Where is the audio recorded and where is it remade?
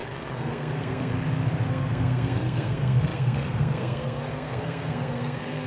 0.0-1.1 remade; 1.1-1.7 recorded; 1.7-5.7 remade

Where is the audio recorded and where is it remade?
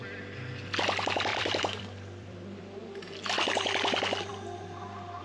0.0-1.3 recorded; 1.3-2.6 remade; 2.6-5.2 recorded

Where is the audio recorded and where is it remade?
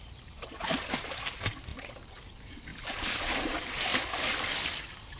0.0-2.7 remade; 2.7-3.3 recorded; 3.3-3.9 remade; 3.9-4.8 recorded; 4.8-5.2 remade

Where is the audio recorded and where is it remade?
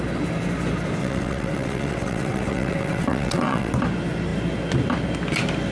0.0-1.0 recorded; 1.0-3.7 remade; 3.7-5.7 recorded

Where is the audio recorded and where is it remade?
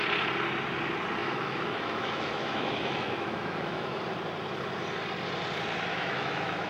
0.0-1.2 recorded; 1.2-4.0 remade; 4.0-5.9 recorded; 5.9-6.7 remade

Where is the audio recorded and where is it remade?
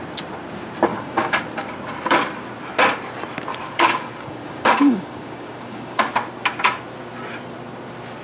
0.0-0.9 recorded; 0.9-1.4 remade; 1.4-3.5 recorded; 3.5-6.0 remade; 6.0-8.2 recorded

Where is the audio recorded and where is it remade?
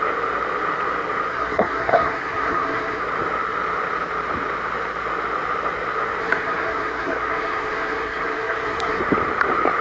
0.0-1.3 recorded; 1.3-3.0 remade; 3.0-6.2 recorded; 6.2-9.0 remade; 9.0-9.8 recorded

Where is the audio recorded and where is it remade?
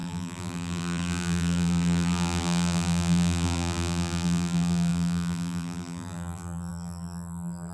0.0-7.7 remade